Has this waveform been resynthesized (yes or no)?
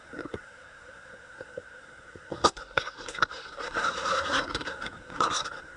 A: yes